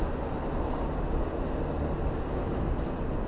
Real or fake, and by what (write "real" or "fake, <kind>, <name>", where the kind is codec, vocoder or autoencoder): real